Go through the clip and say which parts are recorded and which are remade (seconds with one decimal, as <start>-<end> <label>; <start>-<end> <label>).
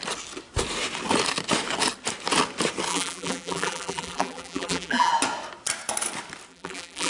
0.0-2.9 recorded; 2.9-5.1 remade; 5.1-6.5 recorded; 6.5-7.1 remade